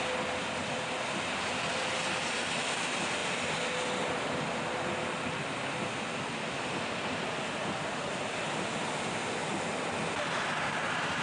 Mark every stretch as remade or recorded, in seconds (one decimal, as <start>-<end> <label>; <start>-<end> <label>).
0.0-11.2 recorded